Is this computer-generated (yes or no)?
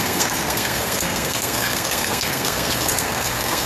yes